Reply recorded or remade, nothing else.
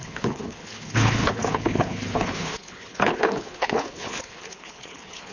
remade